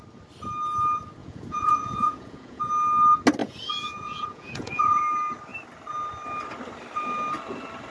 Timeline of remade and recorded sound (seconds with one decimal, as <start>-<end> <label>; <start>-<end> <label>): 0.0-1.2 recorded; 1.2-2.6 remade; 2.6-3.4 recorded; 3.4-5.0 remade; 5.0-7.9 recorded